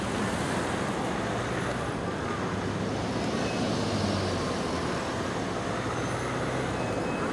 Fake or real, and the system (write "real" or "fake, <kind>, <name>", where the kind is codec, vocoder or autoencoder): real